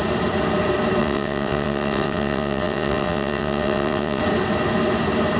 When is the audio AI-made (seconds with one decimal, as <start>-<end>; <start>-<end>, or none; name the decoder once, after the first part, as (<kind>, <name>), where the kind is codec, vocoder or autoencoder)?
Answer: 1.0-4.2 (vocoder, WaveNeXt)